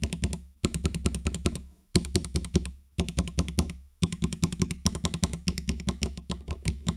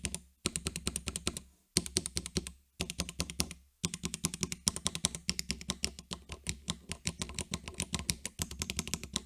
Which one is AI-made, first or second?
first